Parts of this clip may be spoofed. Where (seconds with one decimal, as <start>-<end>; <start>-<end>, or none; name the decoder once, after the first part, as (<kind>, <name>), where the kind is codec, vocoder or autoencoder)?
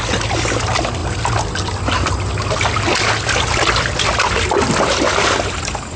none